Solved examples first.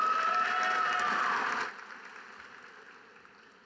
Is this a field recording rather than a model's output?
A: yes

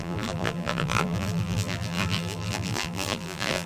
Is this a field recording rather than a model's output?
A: no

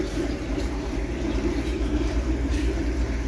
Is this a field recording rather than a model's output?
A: no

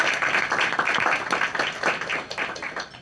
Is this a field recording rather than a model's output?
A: yes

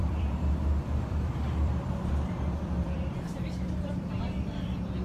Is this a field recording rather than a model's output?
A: no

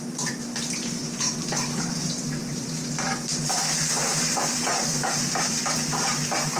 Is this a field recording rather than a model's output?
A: no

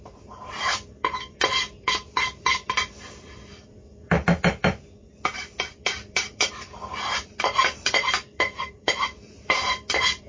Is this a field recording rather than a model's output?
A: no